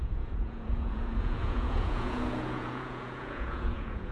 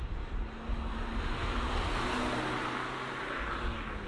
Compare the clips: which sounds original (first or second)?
second